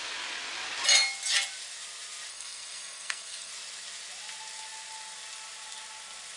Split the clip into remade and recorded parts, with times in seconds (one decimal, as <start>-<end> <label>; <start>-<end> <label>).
0.0-2.3 recorded; 2.3-3.5 remade; 3.5-6.4 recorded